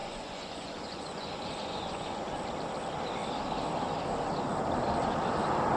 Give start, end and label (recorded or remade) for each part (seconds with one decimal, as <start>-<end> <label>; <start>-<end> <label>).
0.0-2.4 remade; 2.4-5.8 recorded